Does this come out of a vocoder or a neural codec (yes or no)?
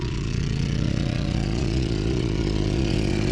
yes